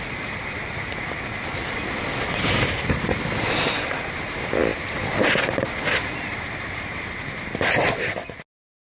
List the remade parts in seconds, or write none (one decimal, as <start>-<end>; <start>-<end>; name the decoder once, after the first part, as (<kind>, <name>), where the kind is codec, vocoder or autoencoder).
none